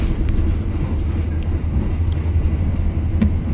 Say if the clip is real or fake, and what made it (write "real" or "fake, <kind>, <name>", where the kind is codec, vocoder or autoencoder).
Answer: real